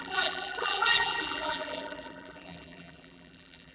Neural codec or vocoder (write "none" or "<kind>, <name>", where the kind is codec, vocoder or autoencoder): vocoder, BigVGAN v2